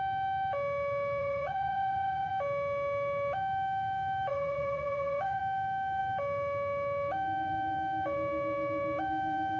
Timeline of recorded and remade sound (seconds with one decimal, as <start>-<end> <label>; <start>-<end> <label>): 0.0-1.2 recorded; 1.2-2.3 remade; 2.3-4.3 recorded; 4.3-5.4 remade; 5.4-9.6 recorded